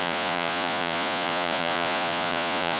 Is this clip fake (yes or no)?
yes